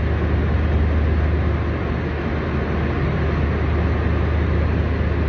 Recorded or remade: recorded